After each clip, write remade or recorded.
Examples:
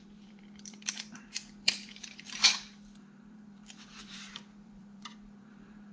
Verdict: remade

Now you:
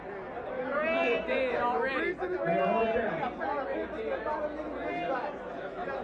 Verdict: recorded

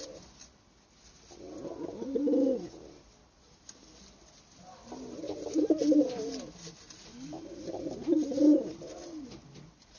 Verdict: recorded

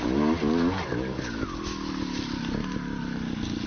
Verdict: recorded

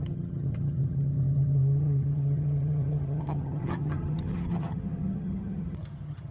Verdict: remade